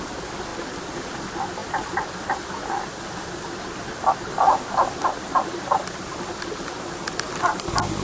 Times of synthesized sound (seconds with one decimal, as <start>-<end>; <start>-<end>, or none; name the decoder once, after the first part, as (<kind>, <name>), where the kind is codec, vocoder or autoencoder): none